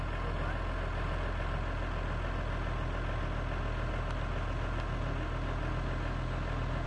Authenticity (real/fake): real